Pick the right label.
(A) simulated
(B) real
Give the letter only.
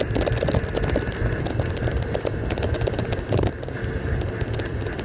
B